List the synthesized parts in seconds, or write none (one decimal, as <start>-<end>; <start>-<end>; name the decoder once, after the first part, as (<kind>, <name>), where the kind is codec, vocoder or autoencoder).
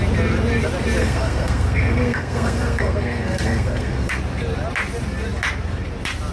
1.0-4.2 (codec, SNAC)